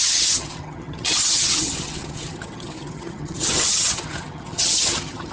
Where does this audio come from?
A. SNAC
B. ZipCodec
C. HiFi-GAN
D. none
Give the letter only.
C